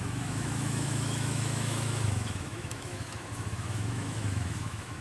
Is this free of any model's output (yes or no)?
no